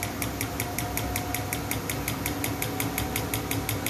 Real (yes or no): yes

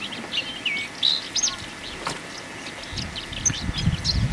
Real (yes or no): yes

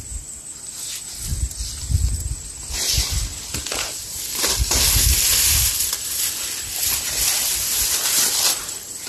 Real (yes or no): yes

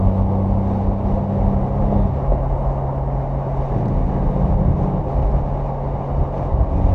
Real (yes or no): yes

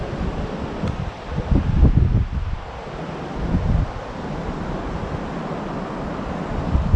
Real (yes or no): yes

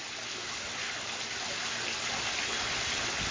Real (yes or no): yes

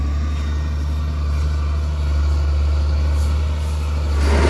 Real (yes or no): yes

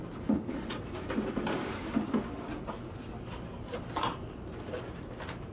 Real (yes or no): yes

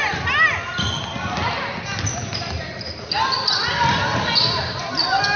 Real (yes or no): yes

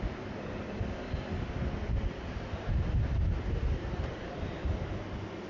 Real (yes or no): yes